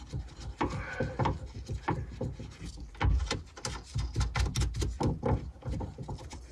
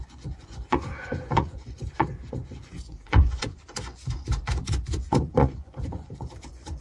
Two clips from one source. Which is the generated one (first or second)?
second